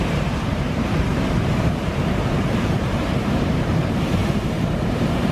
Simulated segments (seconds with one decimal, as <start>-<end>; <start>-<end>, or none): 0.0-5.3